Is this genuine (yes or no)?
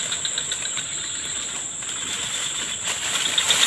yes